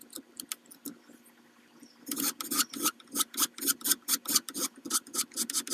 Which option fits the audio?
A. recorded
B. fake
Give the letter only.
A